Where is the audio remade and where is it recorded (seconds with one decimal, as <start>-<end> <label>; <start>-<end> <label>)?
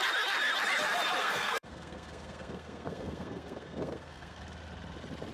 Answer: 0.0-1.2 recorded; 1.2-4.4 remade; 4.4-5.3 recorded